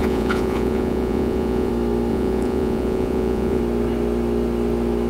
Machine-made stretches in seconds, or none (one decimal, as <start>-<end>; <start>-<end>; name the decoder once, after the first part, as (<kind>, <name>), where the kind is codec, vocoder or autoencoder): 0.0-1.7 (vocoder, Vocos); 2.1-3.6